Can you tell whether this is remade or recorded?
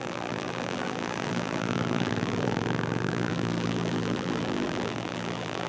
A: remade